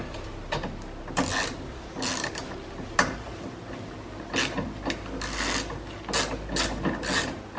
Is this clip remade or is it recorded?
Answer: recorded